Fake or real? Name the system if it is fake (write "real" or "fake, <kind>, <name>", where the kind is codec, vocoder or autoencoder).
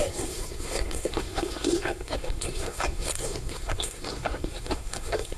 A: fake, codec, SNAC